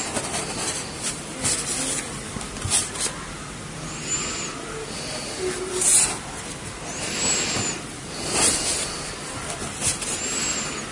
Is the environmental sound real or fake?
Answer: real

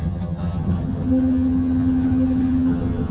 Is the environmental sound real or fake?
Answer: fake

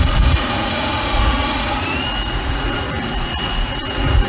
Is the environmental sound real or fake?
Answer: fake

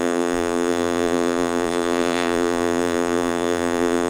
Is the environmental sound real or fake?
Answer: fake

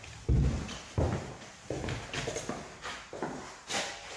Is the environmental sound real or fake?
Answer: fake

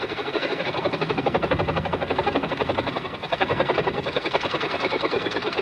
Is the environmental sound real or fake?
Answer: fake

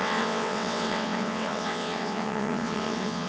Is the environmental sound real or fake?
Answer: fake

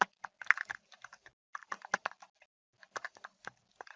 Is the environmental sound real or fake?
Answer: real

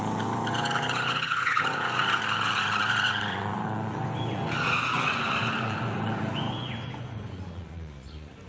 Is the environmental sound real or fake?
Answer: fake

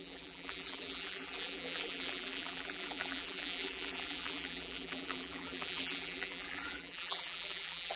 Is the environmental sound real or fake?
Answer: fake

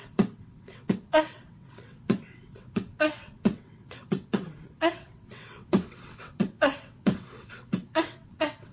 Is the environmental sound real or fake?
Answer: fake